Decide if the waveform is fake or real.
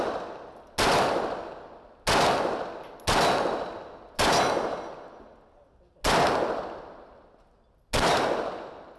real